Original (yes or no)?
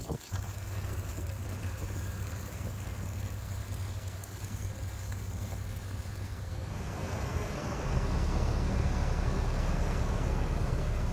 no